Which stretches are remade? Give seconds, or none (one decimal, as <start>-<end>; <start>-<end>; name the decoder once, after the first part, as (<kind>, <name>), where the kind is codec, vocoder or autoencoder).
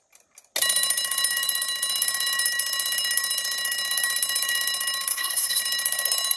5.1-5.6 (codec, SNAC)